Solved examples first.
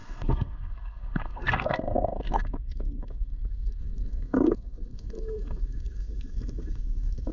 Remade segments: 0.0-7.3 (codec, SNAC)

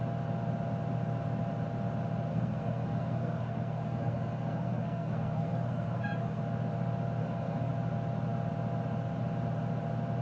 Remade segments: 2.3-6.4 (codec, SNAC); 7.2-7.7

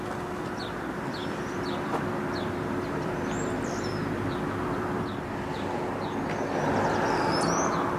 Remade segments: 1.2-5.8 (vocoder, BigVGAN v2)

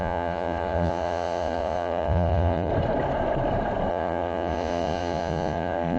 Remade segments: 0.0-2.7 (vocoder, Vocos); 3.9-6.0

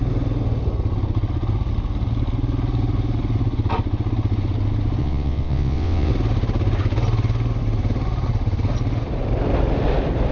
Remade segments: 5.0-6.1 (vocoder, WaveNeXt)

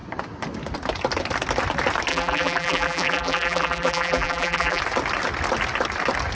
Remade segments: 2.1-4.8 (vocoder, BigVGAN v2)

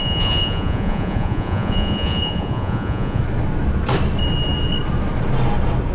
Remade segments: 0.0-3.2 (vocoder, Vocos)

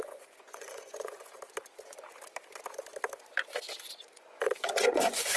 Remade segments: 0.0-1.3 (vocoder, Vocos); 4.0-5.4